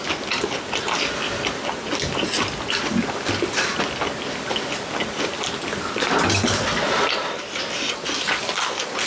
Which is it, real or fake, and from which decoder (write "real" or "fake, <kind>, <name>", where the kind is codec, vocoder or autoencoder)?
real